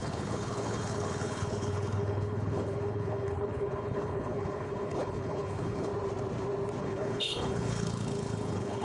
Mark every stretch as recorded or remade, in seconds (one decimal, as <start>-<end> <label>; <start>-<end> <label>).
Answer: 0.0-5.9 remade; 5.9-6.8 recorded; 6.8-8.8 remade